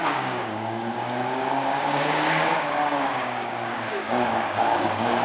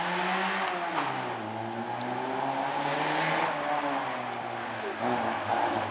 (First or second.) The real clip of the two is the second